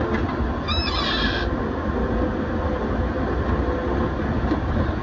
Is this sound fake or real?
real